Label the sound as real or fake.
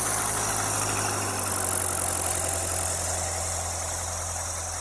real